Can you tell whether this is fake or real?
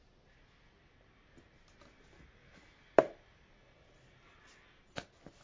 real